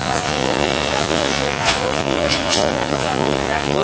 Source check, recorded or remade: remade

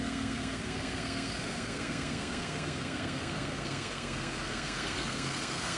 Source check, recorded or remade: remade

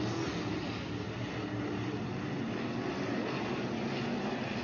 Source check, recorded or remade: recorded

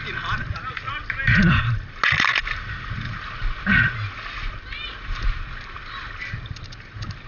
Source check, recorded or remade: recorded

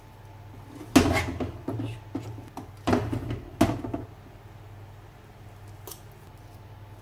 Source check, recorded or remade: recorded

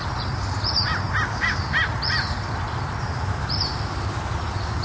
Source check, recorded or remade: recorded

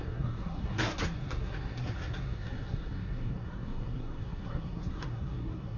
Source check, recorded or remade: remade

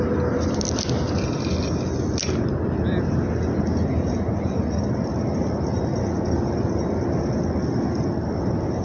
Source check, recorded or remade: recorded